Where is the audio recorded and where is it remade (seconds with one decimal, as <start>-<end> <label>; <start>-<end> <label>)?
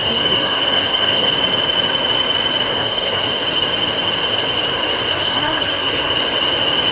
0.0-1.3 remade; 1.3-2.7 recorded; 2.7-3.4 remade; 3.4-5.1 recorded; 5.1-6.1 remade; 6.1-6.9 recorded